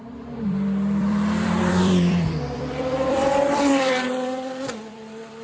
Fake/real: fake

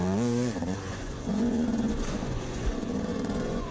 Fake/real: fake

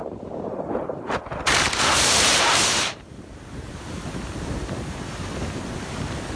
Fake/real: fake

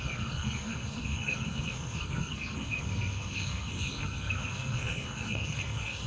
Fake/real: fake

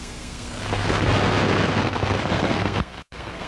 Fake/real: fake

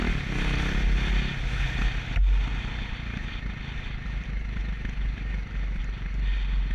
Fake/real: real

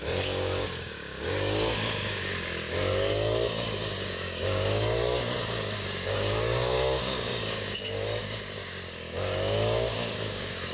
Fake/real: fake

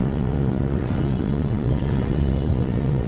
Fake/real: fake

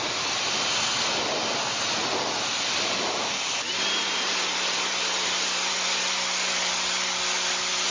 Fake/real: real